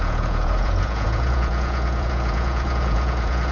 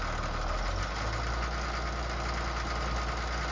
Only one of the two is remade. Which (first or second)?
first